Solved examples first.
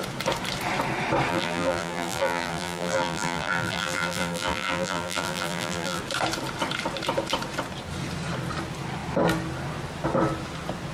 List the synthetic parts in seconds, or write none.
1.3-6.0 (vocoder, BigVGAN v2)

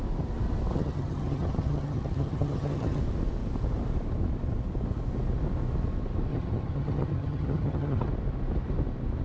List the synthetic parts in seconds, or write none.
0.7-3.0 (vocoder, HiFi-GAN); 6.3-8.1